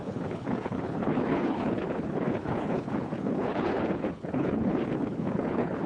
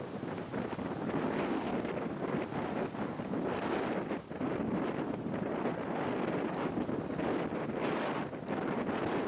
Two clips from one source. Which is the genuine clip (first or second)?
second